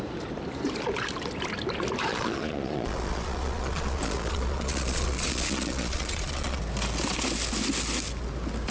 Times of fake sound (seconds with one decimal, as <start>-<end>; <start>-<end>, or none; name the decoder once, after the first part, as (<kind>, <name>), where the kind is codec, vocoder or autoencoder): 2.1-6.6 (vocoder, Vocos)